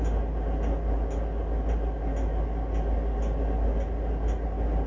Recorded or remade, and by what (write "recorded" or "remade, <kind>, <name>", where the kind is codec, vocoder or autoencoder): recorded